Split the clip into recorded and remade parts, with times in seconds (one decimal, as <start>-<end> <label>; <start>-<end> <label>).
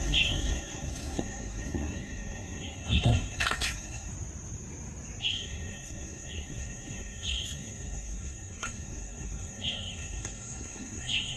0.0-4.1 remade; 4.1-5.2 recorded; 5.2-11.4 remade